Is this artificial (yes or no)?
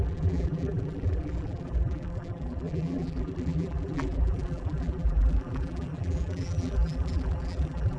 yes